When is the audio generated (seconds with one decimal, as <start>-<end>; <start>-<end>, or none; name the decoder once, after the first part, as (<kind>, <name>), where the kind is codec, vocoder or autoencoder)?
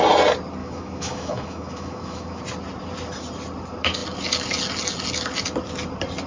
0.6-2.4 (autoencoder, DAC-VAE)